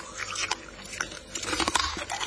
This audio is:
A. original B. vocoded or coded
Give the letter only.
A